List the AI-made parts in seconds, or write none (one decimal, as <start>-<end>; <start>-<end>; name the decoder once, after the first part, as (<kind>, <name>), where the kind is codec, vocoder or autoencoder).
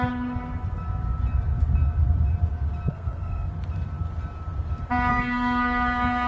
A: 2.9-3.5 (codec, SNAC); 5.1-6.3